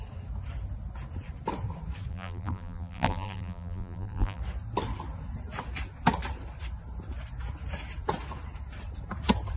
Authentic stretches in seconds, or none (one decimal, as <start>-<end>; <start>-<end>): 0.0-2.1; 4.4-9.6